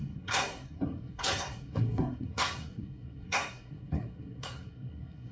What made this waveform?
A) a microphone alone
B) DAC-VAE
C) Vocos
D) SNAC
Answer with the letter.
D